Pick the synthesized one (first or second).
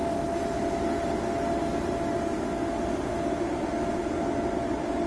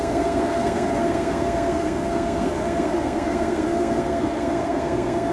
second